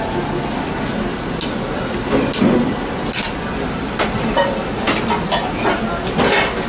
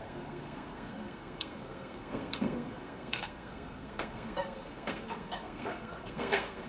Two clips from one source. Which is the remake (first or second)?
second